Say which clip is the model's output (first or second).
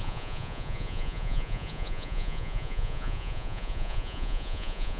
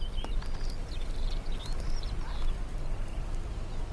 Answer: first